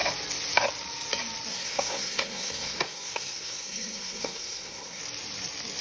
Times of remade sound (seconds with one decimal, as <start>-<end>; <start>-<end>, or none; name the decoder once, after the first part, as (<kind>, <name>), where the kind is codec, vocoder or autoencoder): 1.5-5.0 (codec, SNAC)